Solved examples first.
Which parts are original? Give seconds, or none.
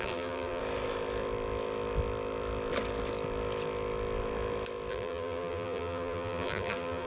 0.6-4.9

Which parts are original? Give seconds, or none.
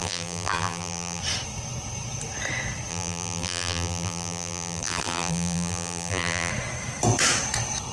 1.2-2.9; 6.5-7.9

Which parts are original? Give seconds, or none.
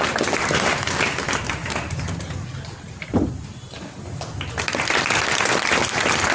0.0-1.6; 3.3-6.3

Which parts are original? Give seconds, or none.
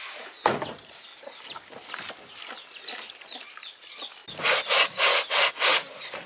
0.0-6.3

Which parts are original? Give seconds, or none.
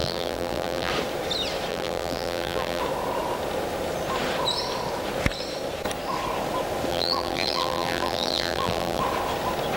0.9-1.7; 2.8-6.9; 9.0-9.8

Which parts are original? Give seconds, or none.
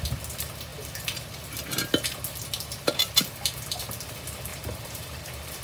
0.0-4.5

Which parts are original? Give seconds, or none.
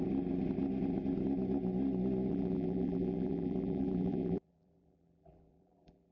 0.0-2.3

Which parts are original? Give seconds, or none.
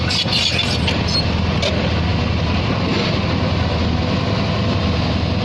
0.0-5.4